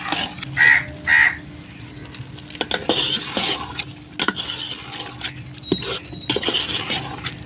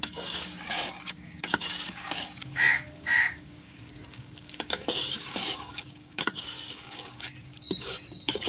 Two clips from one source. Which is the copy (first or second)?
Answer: second